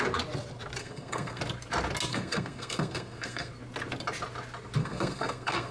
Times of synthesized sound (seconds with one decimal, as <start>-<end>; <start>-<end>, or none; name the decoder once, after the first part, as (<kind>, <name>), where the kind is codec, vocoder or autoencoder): 0.8-1.4 (codec, SNAC); 2.1-3.5; 4.8-5.7